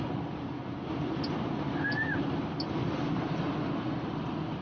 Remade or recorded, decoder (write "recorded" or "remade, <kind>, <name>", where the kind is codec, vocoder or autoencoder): recorded